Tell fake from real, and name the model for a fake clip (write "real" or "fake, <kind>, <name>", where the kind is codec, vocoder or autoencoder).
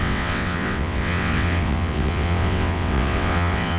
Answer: fake, vocoder, WaveNeXt